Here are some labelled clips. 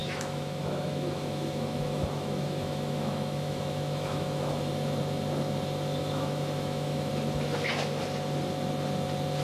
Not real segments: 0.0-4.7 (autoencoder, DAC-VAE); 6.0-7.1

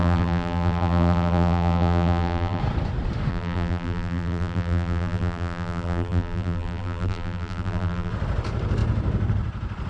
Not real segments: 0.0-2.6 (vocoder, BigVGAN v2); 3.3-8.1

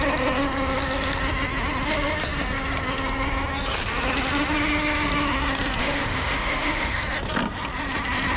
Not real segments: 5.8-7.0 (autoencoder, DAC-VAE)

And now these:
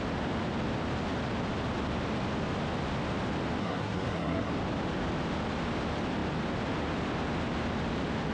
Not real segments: 3.6-4.5 (codec, SNAC)

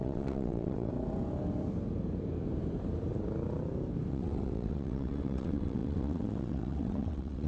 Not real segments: 0.0-0.9 (vocoder, WaveNeXt); 4.1-7.5

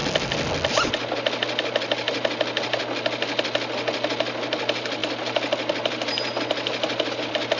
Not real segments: none

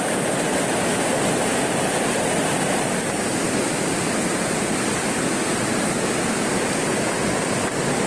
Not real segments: none

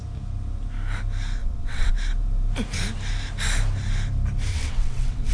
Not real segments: 1.4-1.9 (vocoder, WaveNeXt); 4.5-5.3